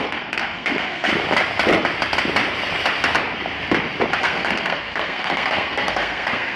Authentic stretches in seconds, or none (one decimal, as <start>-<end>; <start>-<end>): 1.1-4.2